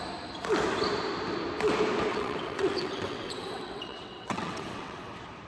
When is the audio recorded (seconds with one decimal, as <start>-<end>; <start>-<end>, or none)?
0.0-2.1; 5.1-5.5